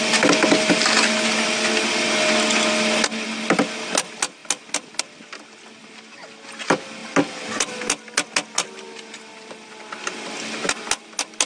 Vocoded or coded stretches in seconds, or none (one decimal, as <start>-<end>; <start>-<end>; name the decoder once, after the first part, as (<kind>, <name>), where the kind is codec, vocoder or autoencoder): none